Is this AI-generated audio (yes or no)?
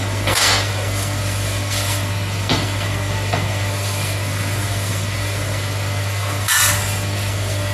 yes